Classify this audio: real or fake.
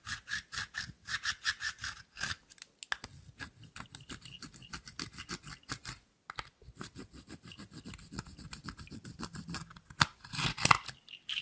real